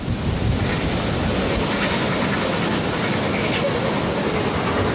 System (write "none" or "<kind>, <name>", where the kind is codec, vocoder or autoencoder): none